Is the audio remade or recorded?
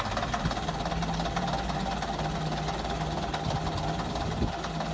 recorded